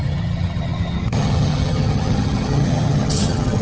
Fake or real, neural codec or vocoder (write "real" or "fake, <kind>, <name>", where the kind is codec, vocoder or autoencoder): fake, vocoder, HiFi-GAN